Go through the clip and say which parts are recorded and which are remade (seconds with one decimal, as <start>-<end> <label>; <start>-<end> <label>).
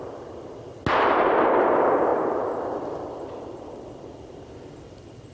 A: 0.0-5.3 recorded